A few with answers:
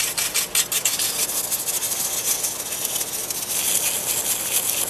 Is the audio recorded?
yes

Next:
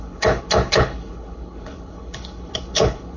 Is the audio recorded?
no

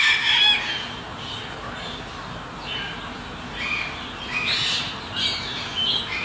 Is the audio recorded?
yes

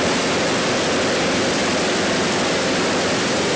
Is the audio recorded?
yes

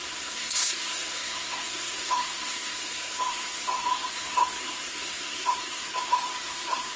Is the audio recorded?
no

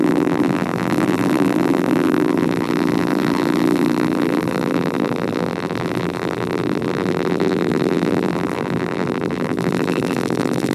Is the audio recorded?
no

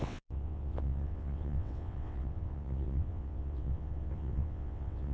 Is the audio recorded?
no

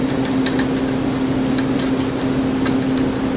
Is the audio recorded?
yes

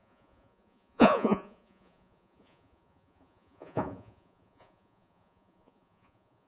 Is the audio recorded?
no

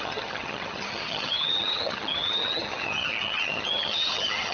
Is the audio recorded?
no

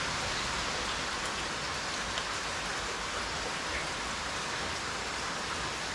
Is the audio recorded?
yes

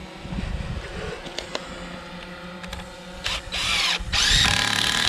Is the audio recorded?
yes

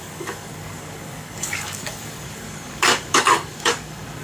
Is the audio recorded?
no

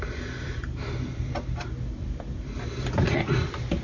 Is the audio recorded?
no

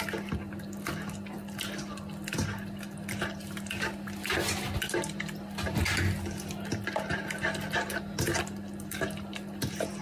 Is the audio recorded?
yes